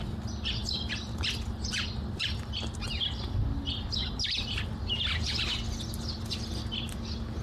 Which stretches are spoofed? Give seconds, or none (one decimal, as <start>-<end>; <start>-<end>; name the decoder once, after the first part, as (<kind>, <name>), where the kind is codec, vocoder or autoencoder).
none